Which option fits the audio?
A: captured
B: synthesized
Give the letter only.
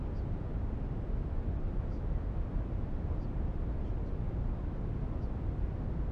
A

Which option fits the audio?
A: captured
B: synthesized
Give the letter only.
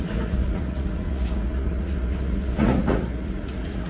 B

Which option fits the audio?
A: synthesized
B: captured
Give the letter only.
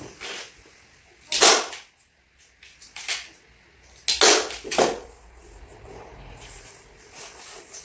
B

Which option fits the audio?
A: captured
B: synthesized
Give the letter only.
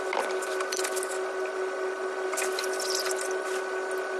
A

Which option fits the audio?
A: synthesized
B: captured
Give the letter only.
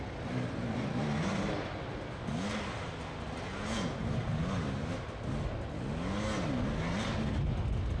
B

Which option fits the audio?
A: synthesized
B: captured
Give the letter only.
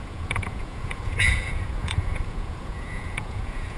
A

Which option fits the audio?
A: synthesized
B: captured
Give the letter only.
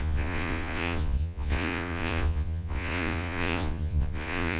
A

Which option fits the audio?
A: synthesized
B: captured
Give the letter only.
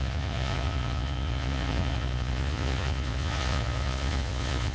A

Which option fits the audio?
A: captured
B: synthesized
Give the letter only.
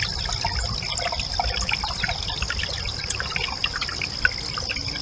A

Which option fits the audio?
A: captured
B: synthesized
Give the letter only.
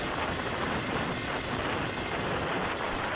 A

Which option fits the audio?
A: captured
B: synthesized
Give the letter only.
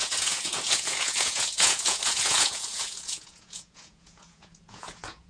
B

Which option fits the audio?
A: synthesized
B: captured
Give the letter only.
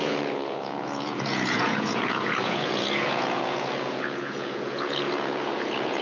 A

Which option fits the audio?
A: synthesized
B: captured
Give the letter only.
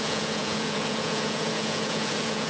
A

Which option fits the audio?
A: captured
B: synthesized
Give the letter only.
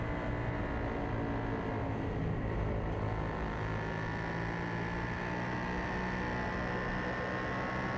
A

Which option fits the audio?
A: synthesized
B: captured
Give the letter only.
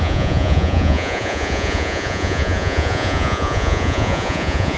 A